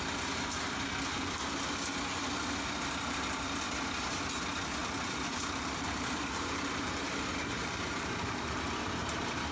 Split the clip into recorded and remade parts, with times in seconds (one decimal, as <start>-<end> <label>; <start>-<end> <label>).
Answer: 0.0-4.8 recorded; 4.8-9.5 remade